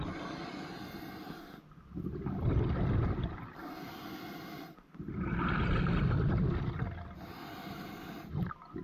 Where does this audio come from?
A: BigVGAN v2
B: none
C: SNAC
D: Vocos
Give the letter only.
B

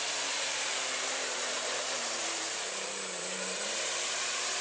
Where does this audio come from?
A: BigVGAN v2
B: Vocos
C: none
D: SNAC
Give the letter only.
A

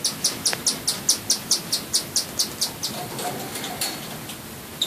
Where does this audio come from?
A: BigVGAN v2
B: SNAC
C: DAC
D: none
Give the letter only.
D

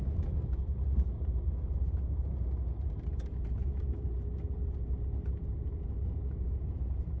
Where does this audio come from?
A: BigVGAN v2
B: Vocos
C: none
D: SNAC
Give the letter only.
A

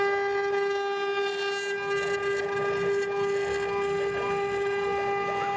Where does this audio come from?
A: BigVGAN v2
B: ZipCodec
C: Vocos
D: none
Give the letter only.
D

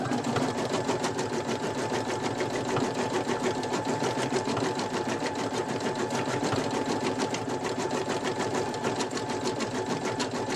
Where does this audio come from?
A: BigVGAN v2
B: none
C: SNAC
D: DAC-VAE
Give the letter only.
A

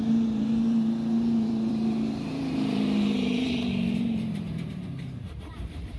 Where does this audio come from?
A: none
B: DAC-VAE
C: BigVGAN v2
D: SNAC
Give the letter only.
C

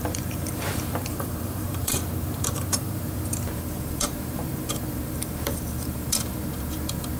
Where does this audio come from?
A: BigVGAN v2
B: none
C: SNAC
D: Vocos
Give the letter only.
A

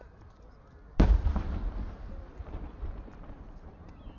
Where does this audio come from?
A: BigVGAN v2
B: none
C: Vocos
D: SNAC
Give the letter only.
B